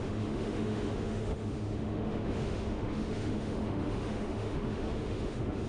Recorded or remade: remade